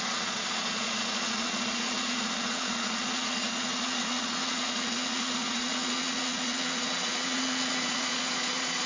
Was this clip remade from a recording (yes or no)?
yes